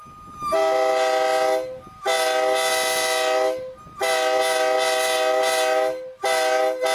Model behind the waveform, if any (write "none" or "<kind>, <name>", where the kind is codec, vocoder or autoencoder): none